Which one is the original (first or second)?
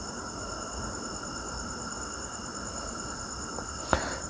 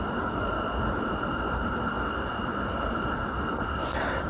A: second